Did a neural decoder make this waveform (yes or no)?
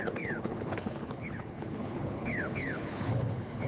yes